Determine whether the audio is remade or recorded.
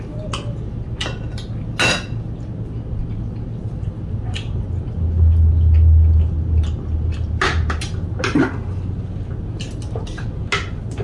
recorded